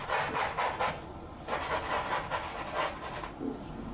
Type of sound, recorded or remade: recorded